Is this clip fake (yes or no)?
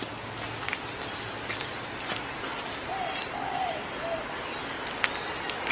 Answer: no